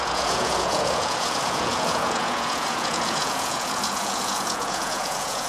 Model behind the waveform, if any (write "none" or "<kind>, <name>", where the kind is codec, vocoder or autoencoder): vocoder, Vocos